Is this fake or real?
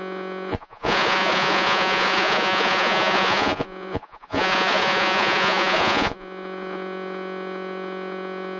fake